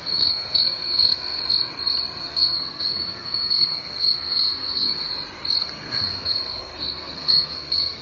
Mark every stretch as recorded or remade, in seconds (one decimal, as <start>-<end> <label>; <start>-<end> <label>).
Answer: 0.0-1.4 remade; 1.4-2.2 recorded; 2.2-5.1 remade; 5.1-5.6 recorded; 5.6-8.0 remade